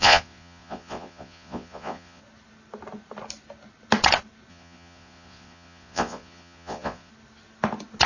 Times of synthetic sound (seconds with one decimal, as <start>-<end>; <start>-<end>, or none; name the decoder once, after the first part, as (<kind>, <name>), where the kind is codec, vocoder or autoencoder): 0.0-2.2 (vocoder, Vocos); 4.5-7.1